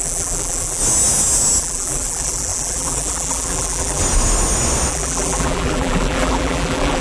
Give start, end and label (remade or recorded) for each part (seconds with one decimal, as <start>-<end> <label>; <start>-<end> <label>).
0.0-0.8 remade; 0.8-1.6 recorded; 1.6-4.0 remade; 4.0-4.9 recorded; 4.9-7.0 remade